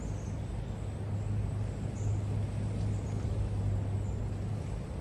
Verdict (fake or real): real